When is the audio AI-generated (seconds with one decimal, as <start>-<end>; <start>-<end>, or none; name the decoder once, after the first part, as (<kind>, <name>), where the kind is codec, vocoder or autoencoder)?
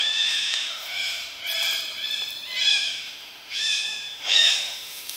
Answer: 0.0-1.4 (autoencoder, DAC-VAE); 2.7-5.2